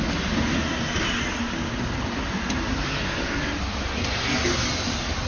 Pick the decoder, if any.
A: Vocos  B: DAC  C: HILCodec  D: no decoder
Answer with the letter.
D